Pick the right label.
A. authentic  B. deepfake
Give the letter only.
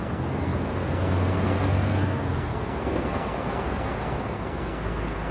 B